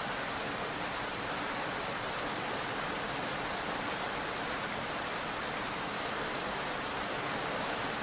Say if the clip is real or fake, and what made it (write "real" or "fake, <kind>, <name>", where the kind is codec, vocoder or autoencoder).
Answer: real